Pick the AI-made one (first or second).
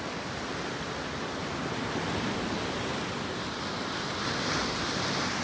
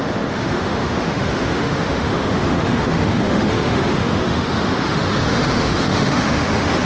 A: second